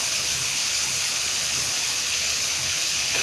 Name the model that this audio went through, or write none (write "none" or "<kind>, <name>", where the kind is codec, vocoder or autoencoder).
codec, HILCodec